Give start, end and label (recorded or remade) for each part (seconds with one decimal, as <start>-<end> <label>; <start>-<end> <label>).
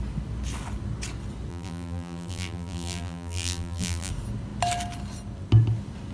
0.0-1.5 recorded; 1.5-4.1 remade; 4.1-6.1 recorded